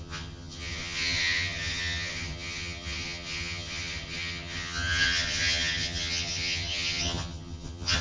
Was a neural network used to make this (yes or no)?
yes